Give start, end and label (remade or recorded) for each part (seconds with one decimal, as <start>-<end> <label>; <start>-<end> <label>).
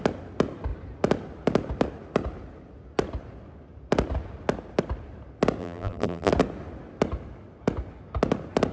0.0-5.6 recorded; 5.6-6.3 remade; 6.3-8.7 recorded